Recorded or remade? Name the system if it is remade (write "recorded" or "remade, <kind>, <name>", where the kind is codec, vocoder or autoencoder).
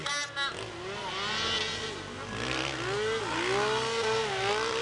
recorded